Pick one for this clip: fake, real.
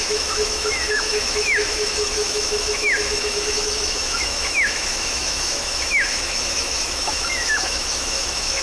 fake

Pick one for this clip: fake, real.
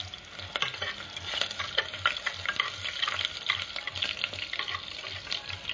real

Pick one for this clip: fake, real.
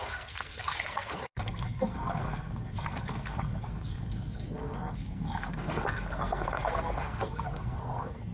fake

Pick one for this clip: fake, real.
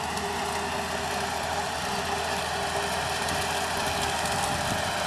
real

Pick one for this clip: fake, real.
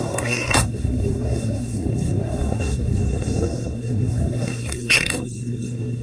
fake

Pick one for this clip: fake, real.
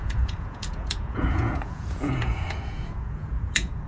fake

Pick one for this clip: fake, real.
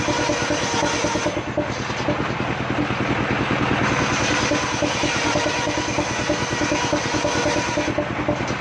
real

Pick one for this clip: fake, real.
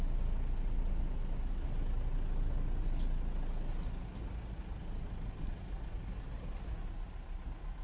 real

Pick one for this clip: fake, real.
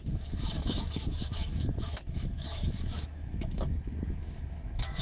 fake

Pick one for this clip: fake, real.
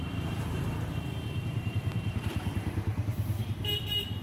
fake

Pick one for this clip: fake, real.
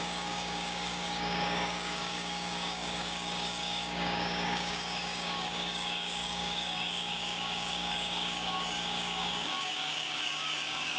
fake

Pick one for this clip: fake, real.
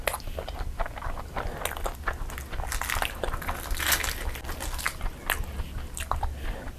real